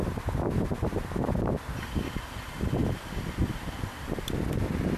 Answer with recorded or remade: recorded